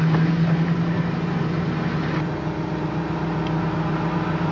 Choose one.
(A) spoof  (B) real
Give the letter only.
B